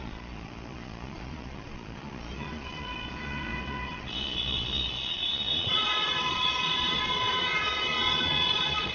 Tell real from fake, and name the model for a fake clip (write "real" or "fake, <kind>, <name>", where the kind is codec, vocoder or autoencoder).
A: fake, vocoder, Vocos